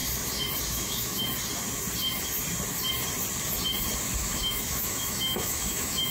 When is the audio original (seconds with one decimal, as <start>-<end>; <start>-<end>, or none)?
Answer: 0.0-0.7; 1.2-4.2